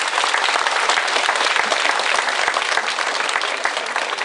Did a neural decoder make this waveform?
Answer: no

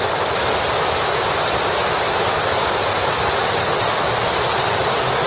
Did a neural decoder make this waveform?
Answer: no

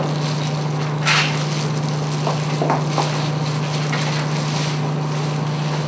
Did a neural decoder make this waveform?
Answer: no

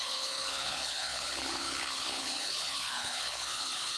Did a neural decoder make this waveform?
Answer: yes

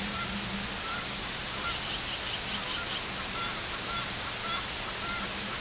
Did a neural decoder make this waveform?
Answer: no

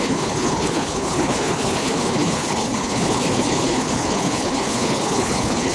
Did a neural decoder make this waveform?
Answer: yes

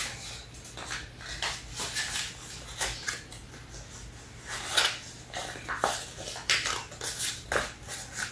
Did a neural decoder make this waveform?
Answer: no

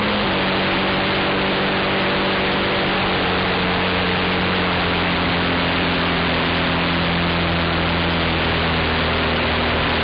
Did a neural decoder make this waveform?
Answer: no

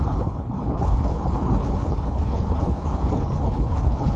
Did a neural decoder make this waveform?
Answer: yes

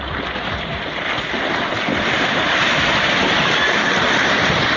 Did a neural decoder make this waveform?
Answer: no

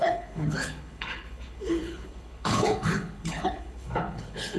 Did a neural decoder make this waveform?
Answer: yes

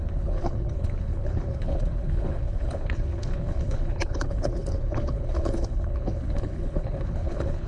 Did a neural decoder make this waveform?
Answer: yes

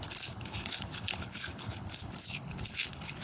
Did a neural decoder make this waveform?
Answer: yes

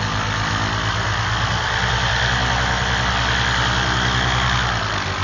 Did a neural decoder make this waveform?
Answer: no